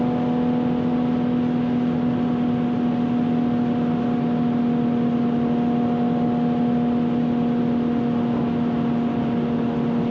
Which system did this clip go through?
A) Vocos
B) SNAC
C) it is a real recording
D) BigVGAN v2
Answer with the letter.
C